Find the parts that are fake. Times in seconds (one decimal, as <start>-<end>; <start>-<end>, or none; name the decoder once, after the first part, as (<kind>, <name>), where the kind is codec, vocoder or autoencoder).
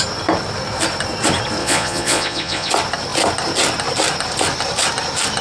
1.6-2.7 (vocoder, Vocos)